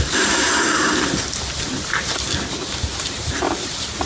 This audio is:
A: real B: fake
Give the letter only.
A